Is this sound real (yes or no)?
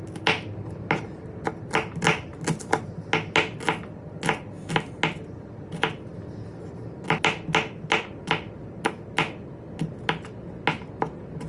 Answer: yes